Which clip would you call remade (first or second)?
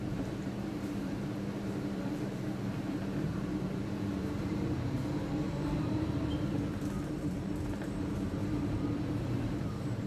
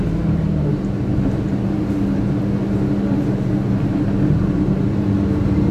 first